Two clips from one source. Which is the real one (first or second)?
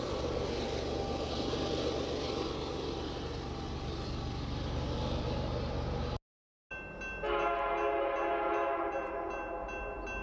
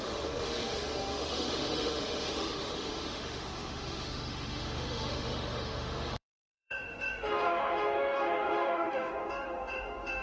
first